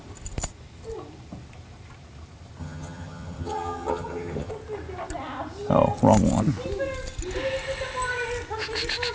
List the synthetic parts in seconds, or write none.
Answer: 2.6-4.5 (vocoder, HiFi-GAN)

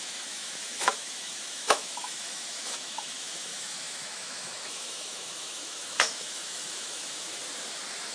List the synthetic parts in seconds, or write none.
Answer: 0.0-7.4 (autoencoder, DAC-VAE)

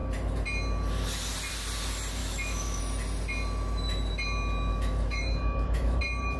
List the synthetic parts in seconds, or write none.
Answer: 2.2-2.8 (autoencoder, DAC-VAE); 4.7-6.0

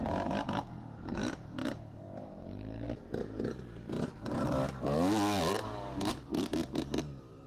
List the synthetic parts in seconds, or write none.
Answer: 0.0-7.5 (codec, DAC)

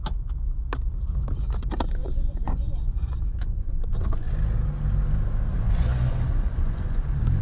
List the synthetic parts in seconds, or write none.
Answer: 2.0-4.3 (vocoder, Vocos); 5.5-7.0

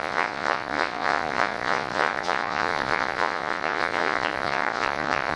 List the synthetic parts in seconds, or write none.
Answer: 0.0-5.4 (vocoder, Vocos)

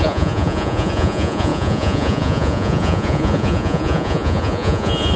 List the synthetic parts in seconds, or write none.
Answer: 0.0-5.2 (vocoder, Vocos)

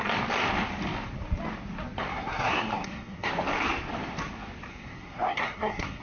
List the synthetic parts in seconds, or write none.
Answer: 2.1-3.3 (codec, SNAC); 4.7-6.0